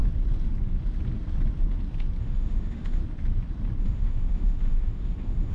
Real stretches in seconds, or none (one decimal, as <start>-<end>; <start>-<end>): 0.0-2.2; 3.0-3.8